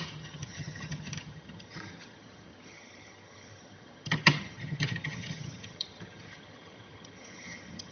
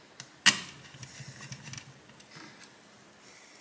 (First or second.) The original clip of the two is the second